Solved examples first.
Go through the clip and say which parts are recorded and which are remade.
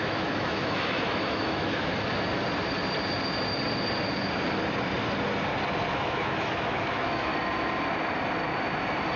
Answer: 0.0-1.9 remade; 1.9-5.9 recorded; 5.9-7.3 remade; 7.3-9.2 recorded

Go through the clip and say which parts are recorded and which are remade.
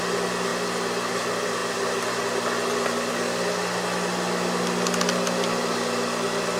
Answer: 0.0-6.6 recorded